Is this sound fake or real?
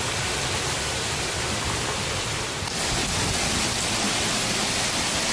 real